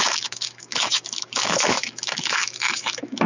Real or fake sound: fake